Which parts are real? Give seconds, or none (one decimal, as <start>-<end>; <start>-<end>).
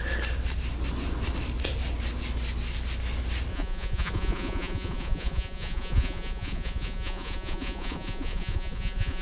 0.0-3.5